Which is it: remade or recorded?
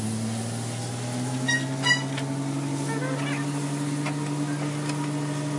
recorded